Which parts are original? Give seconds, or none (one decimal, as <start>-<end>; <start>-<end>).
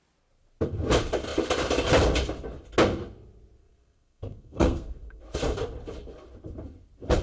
0.0-3.6; 5.2-7.2